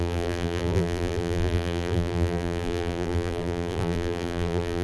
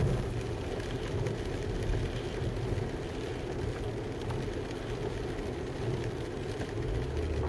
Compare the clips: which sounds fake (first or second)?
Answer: first